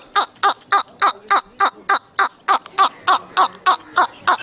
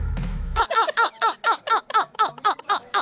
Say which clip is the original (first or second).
first